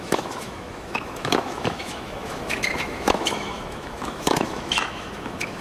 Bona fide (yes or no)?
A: no